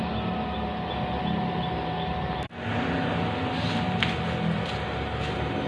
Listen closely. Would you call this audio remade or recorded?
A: recorded